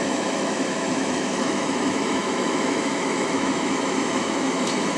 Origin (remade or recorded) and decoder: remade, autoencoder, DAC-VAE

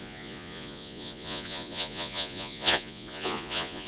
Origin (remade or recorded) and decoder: remade, vocoder, Vocos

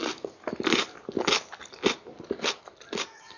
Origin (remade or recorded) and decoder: recorded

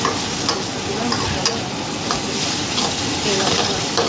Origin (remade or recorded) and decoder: recorded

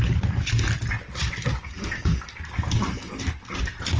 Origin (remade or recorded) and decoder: recorded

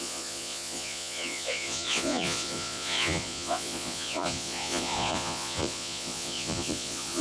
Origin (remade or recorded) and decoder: remade, vocoder, Vocos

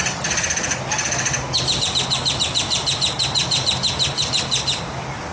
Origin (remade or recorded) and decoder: remade, vocoder, BigVGAN v2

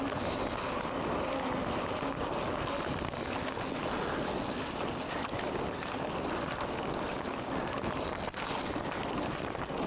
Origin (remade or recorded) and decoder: recorded